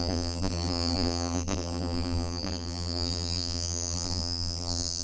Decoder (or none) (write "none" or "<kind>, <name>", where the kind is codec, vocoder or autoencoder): vocoder, BigVGAN v2